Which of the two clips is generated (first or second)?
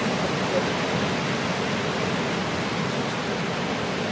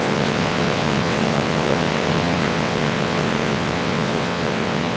second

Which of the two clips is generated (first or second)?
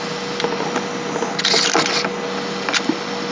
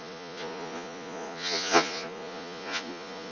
second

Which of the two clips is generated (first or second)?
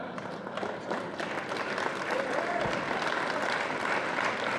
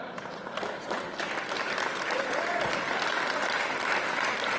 second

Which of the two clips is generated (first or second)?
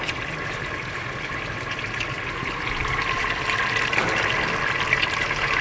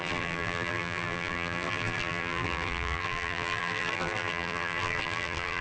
second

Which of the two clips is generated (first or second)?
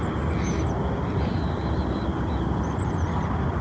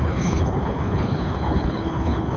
second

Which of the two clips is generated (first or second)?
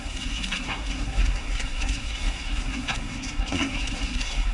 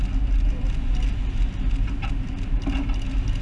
first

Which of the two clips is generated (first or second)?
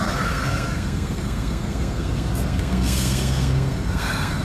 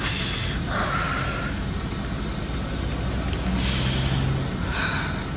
first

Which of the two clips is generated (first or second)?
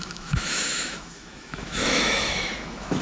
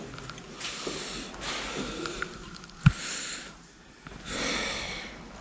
first